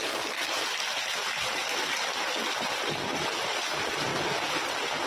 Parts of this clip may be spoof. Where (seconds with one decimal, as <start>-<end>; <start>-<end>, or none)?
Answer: none